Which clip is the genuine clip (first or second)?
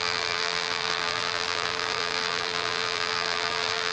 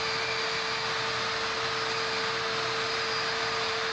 second